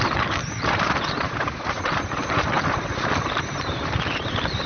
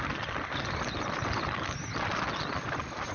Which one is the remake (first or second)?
first